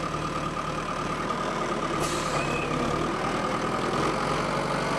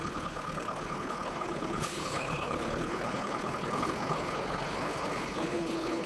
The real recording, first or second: first